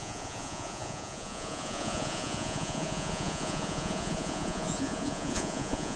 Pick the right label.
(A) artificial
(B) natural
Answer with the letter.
A